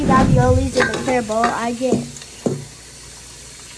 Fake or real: real